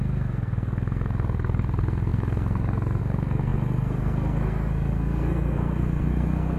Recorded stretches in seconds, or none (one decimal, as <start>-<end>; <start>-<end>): none

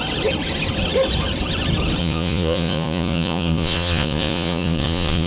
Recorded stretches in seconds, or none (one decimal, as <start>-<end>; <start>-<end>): 0.0-2.0

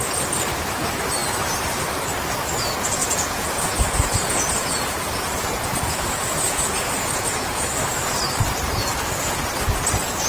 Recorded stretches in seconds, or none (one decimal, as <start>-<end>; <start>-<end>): 0.0-3.0; 7.7-10.3

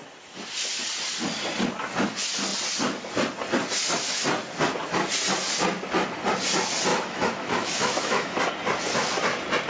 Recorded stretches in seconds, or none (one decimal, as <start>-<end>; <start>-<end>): 0.0-6.9; 8.4-9.7